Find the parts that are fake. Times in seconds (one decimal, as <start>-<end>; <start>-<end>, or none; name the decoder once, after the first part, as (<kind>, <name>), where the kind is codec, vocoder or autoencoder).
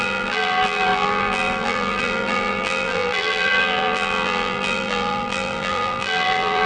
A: 0.0-6.7 (vocoder, BigVGAN v2)